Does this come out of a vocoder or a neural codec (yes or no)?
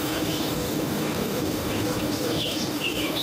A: yes